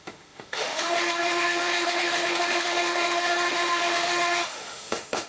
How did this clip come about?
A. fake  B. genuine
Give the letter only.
A